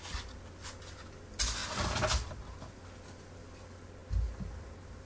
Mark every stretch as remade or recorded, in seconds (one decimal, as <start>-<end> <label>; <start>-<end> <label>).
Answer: 0.0-5.1 recorded